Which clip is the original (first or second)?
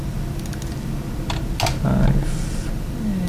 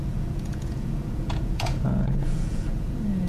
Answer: first